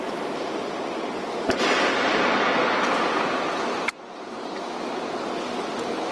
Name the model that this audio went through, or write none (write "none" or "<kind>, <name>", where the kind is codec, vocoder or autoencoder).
none